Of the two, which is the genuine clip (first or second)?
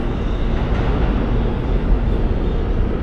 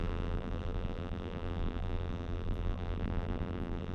first